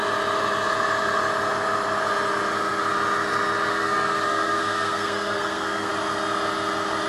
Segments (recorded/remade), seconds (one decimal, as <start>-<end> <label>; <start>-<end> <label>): 0.0-3.7 recorded; 3.7-5.9 remade; 5.9-7.1 recorded